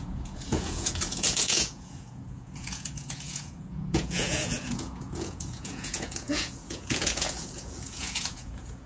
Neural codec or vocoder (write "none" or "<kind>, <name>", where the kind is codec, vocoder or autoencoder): vocoder, Vocos